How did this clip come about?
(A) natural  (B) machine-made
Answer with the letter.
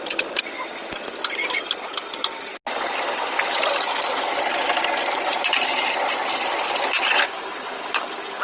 A